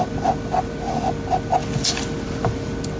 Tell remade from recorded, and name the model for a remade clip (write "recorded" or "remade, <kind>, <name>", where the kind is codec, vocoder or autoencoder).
recorded